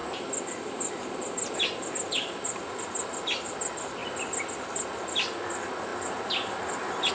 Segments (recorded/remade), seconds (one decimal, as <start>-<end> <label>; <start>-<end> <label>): 0.0-7.1 recorded